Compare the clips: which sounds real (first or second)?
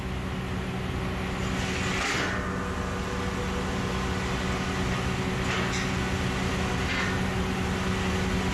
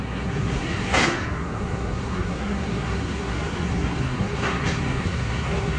first